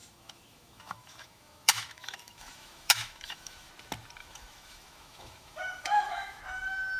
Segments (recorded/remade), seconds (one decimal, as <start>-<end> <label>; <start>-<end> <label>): 0.0-3.7 remade; 3.7-4.2 recorded; 4.2-6.4 remade; 6.4-7.0 recorded